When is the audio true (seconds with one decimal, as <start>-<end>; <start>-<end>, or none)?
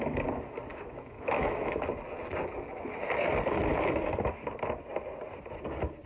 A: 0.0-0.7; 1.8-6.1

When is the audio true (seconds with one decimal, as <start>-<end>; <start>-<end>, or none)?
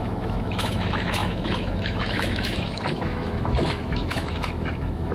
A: none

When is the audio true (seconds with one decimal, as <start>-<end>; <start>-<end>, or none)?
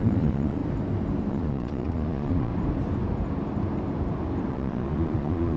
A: 0.6-1.3; 2.5-4.5